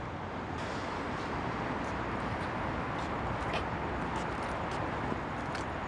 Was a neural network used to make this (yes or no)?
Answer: no